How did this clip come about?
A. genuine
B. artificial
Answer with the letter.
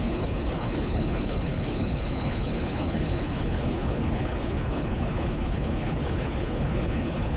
B